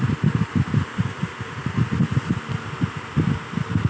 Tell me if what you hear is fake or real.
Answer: real